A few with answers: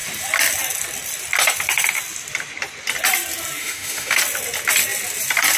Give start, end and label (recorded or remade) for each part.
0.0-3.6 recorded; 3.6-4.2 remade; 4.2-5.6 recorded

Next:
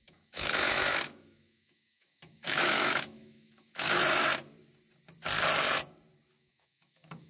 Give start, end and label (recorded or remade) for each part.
0.0-4.0 remade; 4.0-6.3 recorded; 6.3-7.3 remade

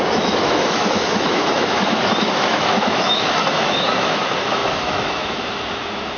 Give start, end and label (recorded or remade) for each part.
0.0-6.2 remade